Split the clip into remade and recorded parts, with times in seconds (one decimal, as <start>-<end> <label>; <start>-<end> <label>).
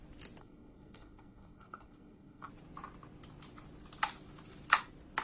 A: 0.0-0.4 recorded; 0.4-2.5 remade; 2.5-5.2 recorded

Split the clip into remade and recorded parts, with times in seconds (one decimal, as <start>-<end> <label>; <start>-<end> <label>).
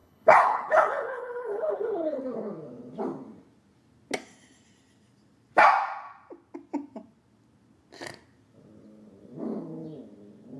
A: 0.0-2.2 remade; 2.2-10.6 recorded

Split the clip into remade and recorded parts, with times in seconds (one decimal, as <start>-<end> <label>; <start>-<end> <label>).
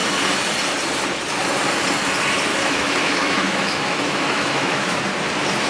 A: 0.0-2.5 recorded; 2.5-5.0 remade; 5.0-5.7 recorded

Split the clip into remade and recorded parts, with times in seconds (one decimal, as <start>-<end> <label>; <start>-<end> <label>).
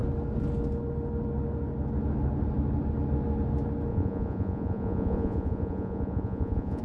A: 0.0-3.9 recorded; 3.9-6.8 remade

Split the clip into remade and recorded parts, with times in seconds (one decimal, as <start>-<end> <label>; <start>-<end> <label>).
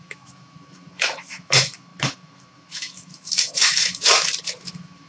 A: 0.0-4.1 remade; 4.1-4.6 recorded; 4.6-5.1 remade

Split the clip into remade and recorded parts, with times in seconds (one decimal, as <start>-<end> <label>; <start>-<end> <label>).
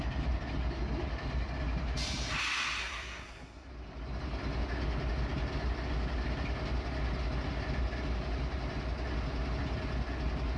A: 0.0-2.8 recorded; 2.8-3.7 remade; 3.7-10.6 recorded